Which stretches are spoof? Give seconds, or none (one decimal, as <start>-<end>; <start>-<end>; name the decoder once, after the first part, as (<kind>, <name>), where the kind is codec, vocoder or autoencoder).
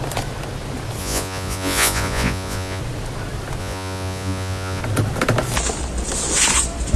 1.0-2.8 (vocoder, Vocos); 3.6-4.8